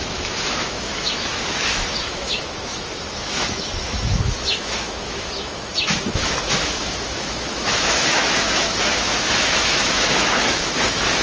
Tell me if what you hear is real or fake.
fake